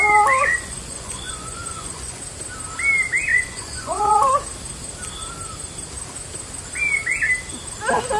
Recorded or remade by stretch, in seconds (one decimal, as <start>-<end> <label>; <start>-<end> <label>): 0.0-0.4 recorded; 0.4-2.2 remade; 2.2-3.3 recorded; 3.3-4.3 remade; 4.3-8.2 recorded